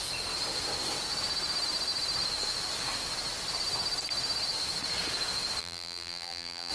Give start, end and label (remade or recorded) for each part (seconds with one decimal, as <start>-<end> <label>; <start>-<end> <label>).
0.0-5.6 recorded; 5.6-6.7 remade